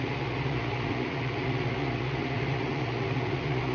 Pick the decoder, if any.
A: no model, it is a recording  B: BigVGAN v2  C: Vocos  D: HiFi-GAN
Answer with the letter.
C